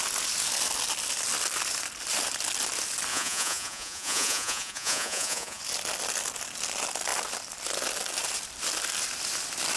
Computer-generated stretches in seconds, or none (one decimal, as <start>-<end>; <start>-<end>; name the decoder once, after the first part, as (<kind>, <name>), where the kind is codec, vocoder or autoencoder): 3.1-5.6 (vocoder, Vocos)